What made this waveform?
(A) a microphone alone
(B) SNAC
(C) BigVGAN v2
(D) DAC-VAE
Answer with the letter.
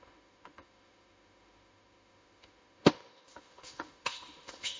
D